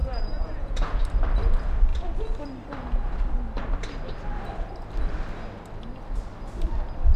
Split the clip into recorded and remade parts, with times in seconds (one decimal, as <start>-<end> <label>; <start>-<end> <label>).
0.0-1.0 remade; 1.0-7.2 recorded